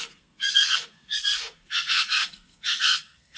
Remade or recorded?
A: remade